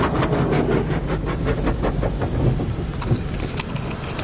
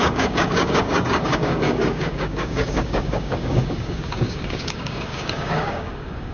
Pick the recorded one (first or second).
first